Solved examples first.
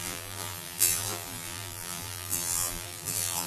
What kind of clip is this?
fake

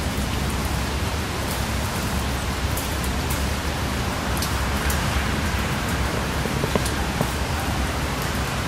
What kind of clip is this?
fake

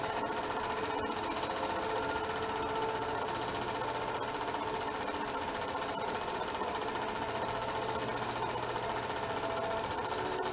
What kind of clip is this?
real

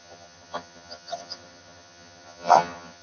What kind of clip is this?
fake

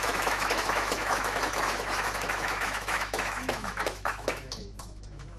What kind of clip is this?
fake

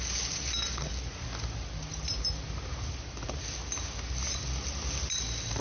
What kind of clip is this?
real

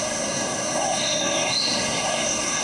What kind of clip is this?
fake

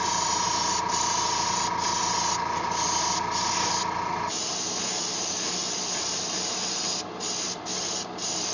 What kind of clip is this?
fake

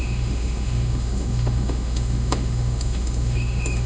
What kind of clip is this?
fake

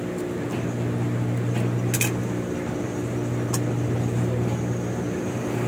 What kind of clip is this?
real